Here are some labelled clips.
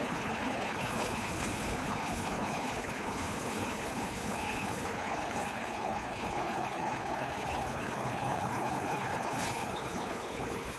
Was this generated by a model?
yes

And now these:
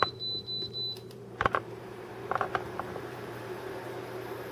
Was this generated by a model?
yes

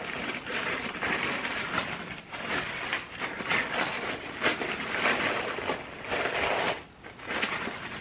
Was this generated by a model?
no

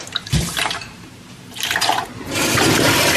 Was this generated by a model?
yes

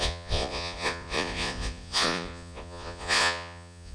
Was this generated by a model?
yes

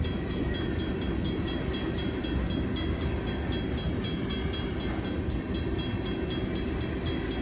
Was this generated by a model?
no